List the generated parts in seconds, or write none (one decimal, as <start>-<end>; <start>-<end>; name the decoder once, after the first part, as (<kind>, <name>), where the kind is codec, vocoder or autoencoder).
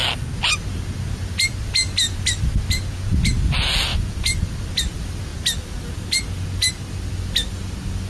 none